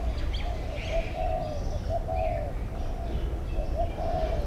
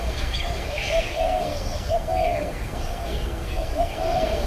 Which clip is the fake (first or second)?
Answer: second